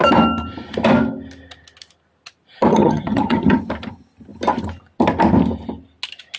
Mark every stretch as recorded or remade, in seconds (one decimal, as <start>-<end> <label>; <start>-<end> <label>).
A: 0.0-2.7 recorded; 2.7-3.6 remade; 3.6-6.4 recorded